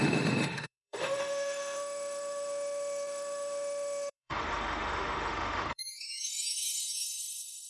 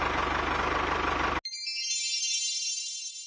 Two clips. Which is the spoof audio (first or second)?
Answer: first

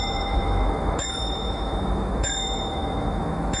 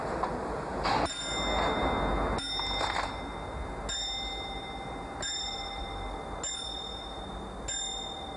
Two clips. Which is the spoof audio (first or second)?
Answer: first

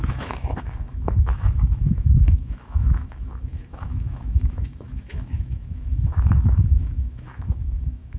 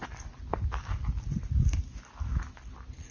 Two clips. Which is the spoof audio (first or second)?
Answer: first